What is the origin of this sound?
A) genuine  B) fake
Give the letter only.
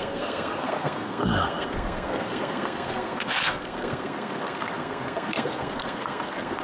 B